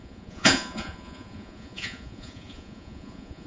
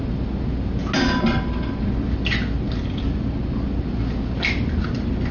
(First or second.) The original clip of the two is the second